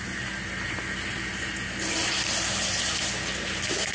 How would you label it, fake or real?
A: real